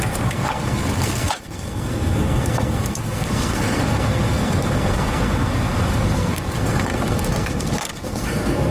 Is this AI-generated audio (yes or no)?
yes